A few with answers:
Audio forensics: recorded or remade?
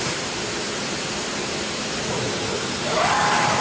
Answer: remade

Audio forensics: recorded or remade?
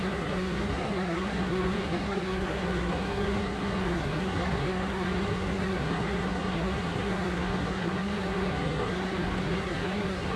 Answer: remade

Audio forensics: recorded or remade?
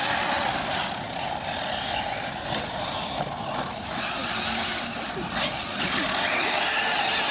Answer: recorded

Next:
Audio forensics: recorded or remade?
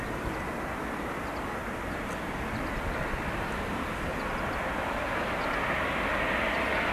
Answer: recorded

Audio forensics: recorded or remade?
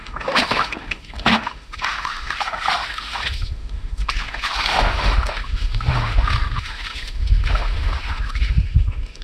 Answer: remade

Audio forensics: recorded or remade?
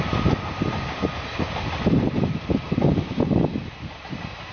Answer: recorded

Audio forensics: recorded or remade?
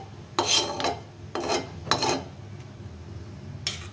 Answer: recorded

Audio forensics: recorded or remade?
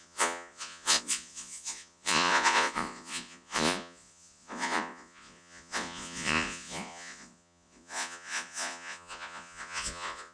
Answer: remade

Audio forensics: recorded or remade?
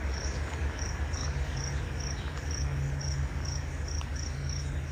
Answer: remade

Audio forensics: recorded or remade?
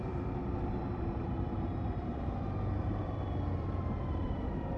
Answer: remade